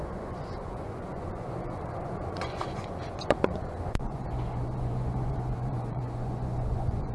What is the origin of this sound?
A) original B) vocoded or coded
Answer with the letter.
B